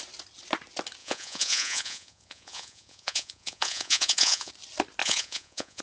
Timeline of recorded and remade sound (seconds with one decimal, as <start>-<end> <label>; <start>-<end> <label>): 0.0-1.0 recorded; 1.0-4.5 remade; 4.5-5.0 recorded; 5.0-5.8 remade